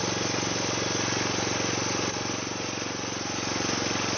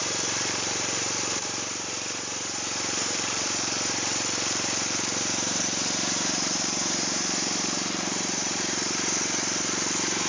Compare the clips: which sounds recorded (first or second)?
first